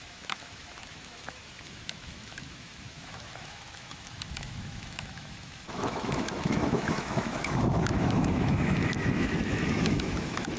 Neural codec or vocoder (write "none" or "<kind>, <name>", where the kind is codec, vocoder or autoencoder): autoencoder, DAC-VAE